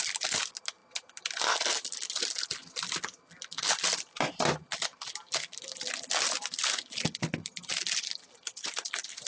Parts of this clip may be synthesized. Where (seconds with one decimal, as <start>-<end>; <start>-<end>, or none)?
none